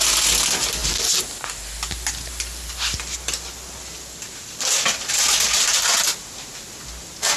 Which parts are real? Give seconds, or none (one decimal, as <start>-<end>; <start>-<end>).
0.0-7.4